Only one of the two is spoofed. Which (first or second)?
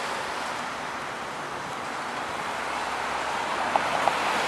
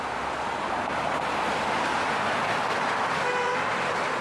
second